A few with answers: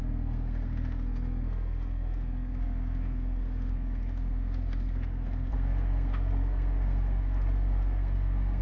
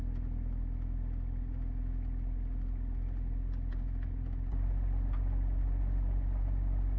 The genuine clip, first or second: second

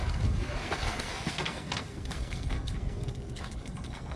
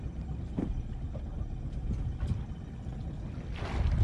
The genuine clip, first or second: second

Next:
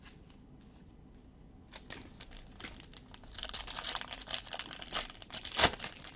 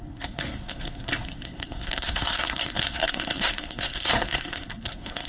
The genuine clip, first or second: first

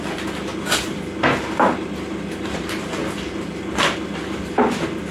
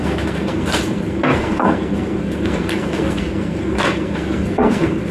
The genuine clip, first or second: first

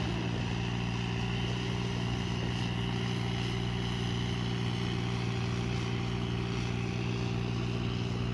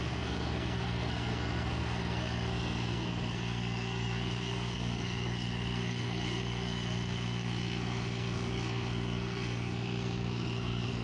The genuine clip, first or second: first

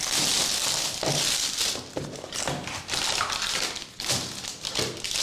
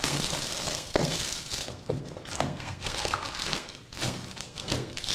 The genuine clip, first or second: first